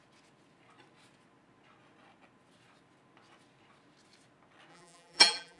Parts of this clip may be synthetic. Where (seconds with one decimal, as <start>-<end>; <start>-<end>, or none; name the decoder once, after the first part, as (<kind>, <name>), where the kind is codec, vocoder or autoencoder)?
4.7-5.6 (vocoder, BigVGAN v2)